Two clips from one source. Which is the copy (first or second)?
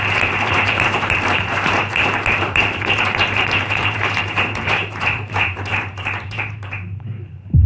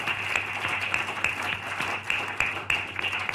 first